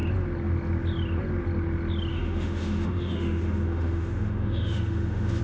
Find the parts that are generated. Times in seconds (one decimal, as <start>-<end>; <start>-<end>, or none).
2.1-5.4